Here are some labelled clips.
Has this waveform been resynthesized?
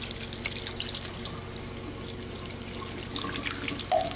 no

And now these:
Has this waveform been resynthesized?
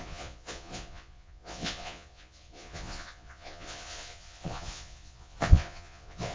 yes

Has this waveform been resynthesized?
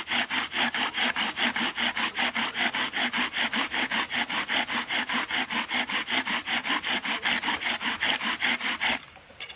no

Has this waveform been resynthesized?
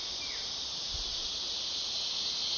no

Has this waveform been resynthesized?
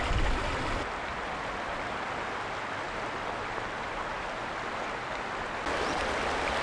no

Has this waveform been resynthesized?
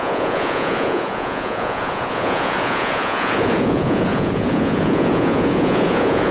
yes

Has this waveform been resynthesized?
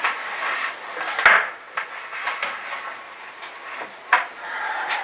no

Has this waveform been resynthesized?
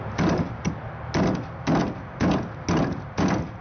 no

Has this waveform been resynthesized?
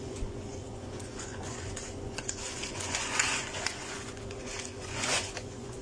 yes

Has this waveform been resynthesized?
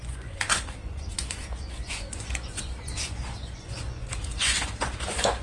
yes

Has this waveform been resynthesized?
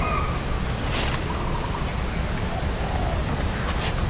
no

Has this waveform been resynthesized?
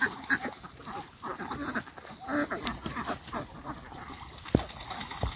no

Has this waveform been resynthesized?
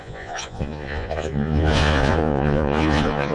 yes